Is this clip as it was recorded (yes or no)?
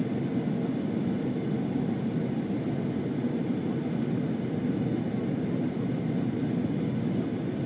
yes